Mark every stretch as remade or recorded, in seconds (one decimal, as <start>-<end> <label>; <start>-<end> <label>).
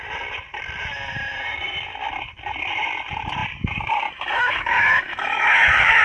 0.0-4.4 recorded; 4.4-6.0 remade